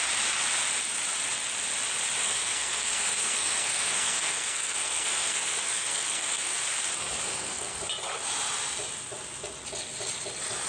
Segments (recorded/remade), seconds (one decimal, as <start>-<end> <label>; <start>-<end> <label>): 0.0-2.2 recorded; 2.2-6.6 remade; 6.6-7.2 recorded; 7.2-7.8 remade; 7.8-10.7 recorded